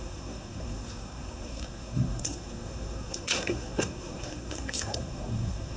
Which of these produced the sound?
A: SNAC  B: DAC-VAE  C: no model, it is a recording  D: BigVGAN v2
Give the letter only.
A